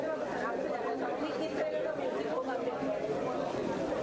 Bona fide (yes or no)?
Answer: yes